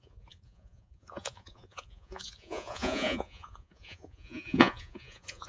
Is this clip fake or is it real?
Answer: fake